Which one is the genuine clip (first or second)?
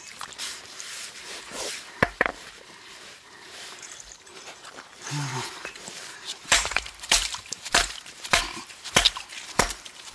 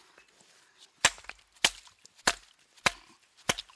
second